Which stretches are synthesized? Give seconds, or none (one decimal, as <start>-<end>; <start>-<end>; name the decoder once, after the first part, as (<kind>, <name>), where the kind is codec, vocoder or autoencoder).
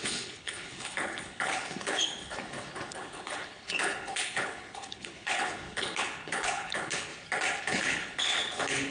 0.0-7.1 (codec, HILCodec); 7.6-8.9